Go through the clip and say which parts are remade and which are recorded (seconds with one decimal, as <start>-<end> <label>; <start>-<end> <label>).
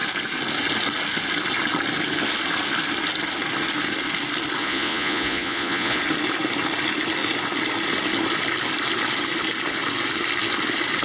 0.0-4.6 recorded; 4.6-6.0 remade; 6.0-11.0 recorded